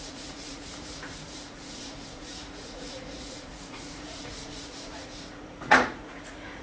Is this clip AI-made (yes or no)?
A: yes